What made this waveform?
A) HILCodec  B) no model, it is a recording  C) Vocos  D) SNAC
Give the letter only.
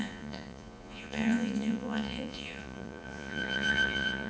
C